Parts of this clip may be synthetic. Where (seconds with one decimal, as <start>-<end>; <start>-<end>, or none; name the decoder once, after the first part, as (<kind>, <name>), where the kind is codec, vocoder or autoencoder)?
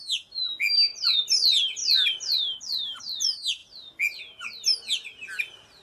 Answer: none